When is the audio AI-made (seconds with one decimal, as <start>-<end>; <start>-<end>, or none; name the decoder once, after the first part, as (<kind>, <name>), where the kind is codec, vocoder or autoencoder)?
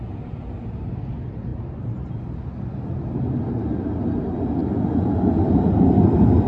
1.5-2.2 (vocoder, BigVGAN v2); 4.6-6.5